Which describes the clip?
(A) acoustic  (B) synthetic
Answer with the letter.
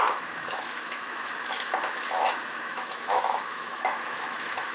B